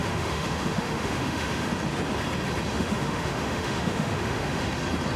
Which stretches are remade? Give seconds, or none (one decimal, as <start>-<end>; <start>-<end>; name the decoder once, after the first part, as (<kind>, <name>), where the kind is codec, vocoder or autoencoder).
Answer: 0.0-1.7 (autoencoder, DAC-VAE); 2.7-4.7